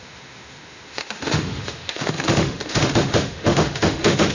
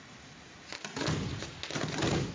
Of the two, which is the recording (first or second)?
second